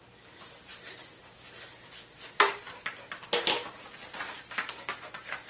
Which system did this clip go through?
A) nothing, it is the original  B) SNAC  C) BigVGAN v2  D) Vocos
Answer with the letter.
A